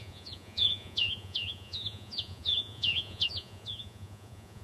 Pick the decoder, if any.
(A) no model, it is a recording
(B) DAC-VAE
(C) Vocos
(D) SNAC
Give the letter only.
C